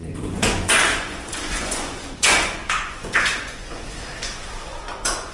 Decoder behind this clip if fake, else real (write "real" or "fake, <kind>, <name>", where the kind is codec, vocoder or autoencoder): fake, vocoder, Vocos